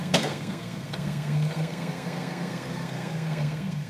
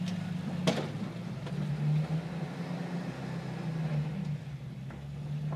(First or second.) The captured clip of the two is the second